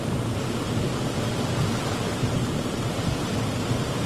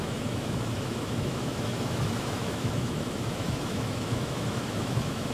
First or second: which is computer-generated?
second